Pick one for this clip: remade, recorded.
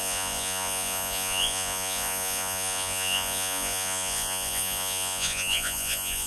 remade